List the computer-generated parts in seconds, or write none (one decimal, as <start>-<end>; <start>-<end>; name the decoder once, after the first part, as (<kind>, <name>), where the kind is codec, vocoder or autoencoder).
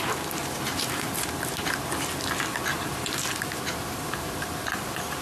0.4-1.1 (vocoder, BigVGAN v2); 2.7-5.2